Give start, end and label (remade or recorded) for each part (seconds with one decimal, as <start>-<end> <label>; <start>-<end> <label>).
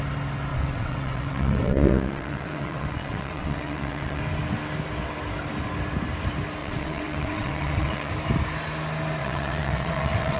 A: 0.0-0.5 recorded; 0.5-4.2 remade; 4.2-6.6 recorded; 6.6-8.1 remade; 8.1-9.2 recorded; 9.2-10.4 remade